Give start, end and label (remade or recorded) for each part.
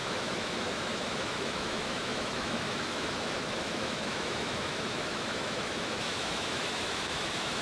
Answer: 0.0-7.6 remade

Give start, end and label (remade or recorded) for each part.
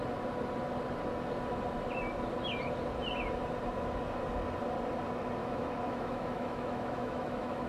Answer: 0.0-5.4 recorded; 5.4-7.7 remade